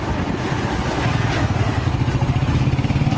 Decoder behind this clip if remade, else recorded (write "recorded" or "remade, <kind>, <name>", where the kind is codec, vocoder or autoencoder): recorded